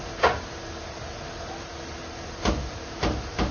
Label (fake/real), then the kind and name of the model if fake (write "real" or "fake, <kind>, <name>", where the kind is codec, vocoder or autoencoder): real